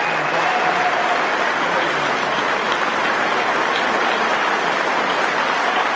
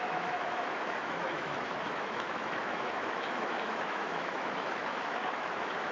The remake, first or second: second